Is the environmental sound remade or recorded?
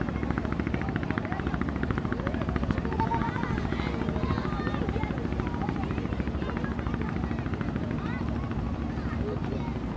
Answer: recorded